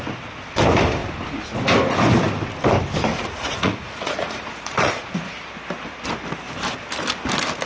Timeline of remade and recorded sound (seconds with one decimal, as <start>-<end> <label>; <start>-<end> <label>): 0.0-3.1 recorded; 3.1-5.1 remade; 5.1-7.7 recorded